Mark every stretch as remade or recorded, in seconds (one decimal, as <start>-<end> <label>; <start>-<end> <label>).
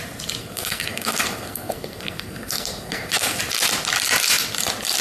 0.0-0.4 recorded; 0.4-3.4 remade; 3.4-5.0 recorded